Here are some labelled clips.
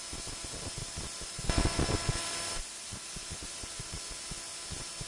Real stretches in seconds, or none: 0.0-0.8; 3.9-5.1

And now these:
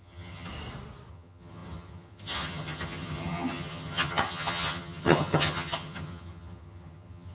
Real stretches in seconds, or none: 0.5-1.1

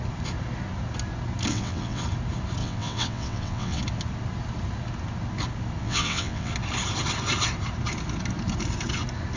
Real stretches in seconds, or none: 0.0-1.5; 2.0-2.6; 3.8-5.8; 6.5-9.4

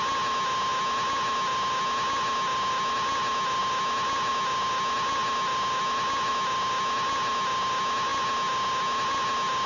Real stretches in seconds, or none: 0.0-9.7

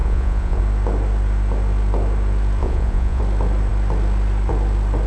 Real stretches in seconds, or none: 0.6-2.6; 3.2-5.1

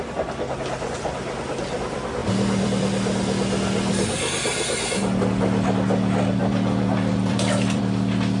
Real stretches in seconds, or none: 0.0-2.2; 2.8-6.4; 7.8-8.4

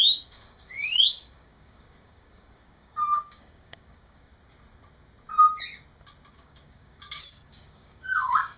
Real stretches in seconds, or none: 4.3-6.3

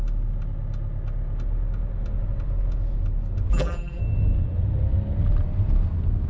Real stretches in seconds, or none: 0.0-3.5; 4.0-6.3